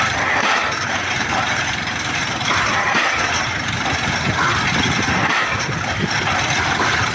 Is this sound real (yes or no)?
no